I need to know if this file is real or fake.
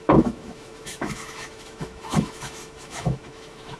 fake